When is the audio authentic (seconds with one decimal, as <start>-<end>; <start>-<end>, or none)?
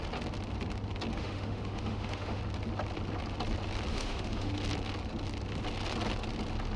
0.0-1.1; 2.4-3.9; 4.5-6.8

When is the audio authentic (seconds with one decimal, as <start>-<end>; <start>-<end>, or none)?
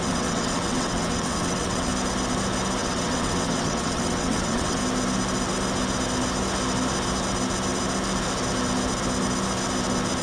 1.9-2.8; 4.8-10.2